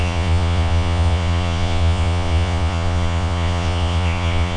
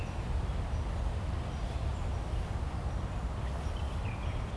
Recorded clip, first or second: second